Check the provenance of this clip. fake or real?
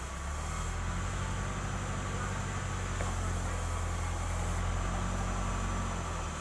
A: real